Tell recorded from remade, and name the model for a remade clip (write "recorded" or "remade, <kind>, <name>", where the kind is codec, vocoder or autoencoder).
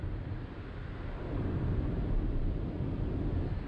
recorded